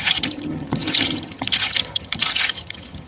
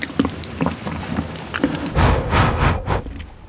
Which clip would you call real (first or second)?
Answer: second